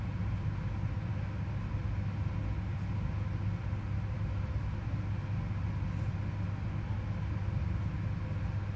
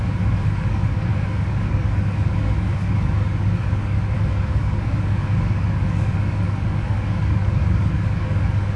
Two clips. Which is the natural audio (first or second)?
first